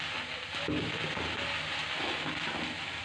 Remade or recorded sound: recorded